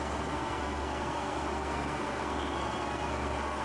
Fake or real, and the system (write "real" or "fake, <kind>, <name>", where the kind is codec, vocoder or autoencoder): fake, codec, SNAC